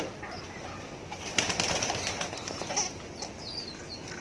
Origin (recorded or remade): recorded